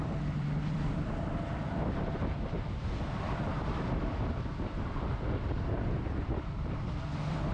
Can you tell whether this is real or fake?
fake